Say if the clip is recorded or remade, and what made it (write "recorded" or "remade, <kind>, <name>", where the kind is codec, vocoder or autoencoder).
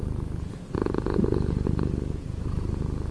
recorded